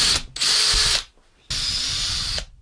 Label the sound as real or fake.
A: real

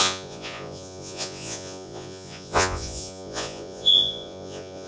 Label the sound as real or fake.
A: fake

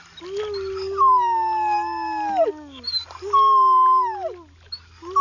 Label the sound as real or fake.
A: real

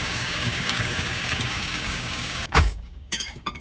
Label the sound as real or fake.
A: fake